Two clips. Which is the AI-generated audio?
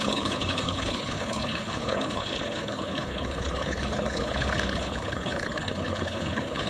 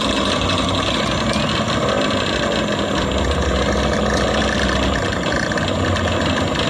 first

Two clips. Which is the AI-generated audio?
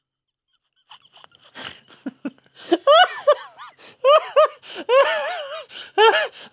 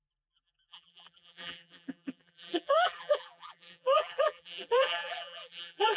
second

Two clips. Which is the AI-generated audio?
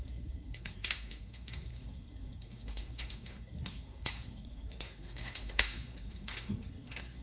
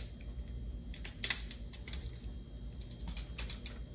first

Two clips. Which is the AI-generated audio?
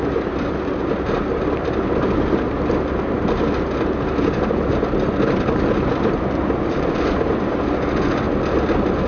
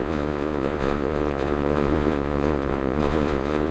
second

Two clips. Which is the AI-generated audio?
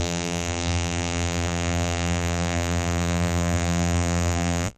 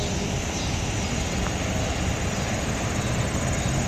first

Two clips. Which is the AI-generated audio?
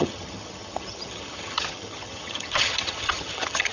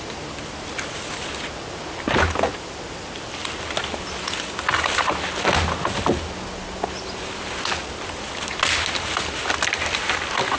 first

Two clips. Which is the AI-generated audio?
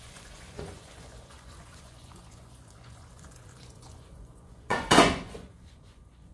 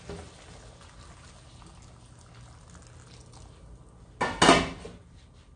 first